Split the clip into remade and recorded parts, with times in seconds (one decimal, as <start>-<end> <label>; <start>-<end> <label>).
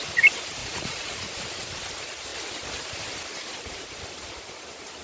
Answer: 0.0-0.6 recorded; 0.6-1.3 remade; 1.3-5.0 recorded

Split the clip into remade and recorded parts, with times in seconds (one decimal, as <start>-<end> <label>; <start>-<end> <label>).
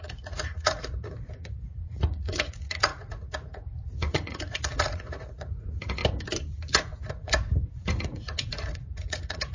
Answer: 0.0-6.0 remade; 6.0-6.7 recorded; 6.7-9.5 remade